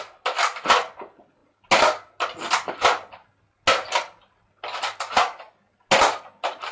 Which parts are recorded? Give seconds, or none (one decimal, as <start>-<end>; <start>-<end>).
0.0-6.7

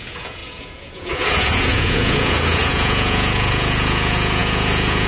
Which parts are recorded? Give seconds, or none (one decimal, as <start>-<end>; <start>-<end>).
none

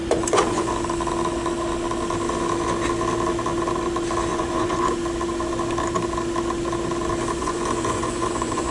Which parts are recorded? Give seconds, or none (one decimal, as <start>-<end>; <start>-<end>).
0.7-4.3; 4.9-7.4

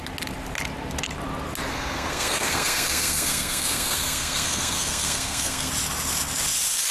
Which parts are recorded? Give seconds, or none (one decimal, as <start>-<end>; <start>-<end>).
0.0-1.7; 5.7-6.9

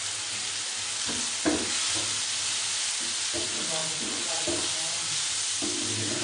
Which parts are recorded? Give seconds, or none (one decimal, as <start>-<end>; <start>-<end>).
0.0-3.8; 4.3-6.2